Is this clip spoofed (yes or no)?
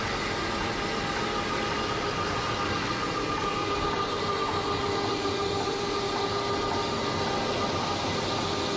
no